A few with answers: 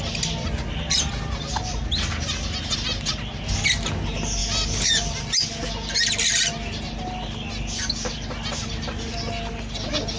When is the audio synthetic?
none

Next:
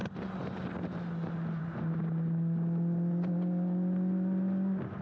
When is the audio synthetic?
none

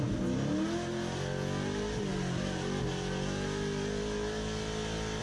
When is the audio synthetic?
none

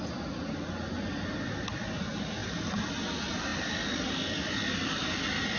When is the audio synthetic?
3.5-4.1 (vocoder, BigVGAN v2)